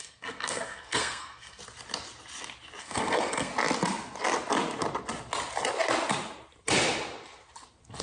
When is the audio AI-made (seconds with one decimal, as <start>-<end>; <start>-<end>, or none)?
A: 0.0-1.6; 2.8-3.5